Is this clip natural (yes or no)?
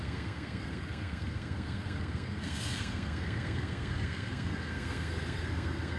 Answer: no